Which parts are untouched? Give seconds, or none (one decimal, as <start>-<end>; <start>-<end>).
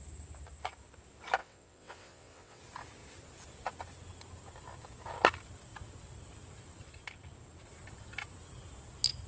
0.0-1.4; 2.6-9.3